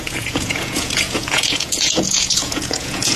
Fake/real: fake